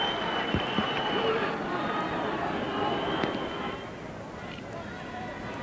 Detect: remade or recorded recorded